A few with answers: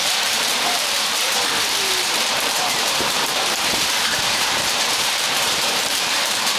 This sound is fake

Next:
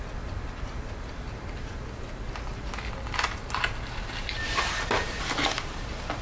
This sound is real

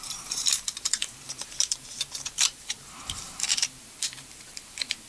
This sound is fake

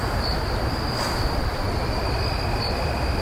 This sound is real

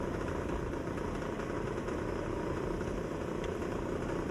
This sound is fake